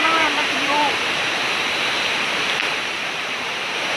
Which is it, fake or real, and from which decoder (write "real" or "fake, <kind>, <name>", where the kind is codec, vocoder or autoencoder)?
fake, vocoder, BigVGAN v2